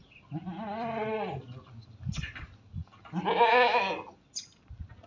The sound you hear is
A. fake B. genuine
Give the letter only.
B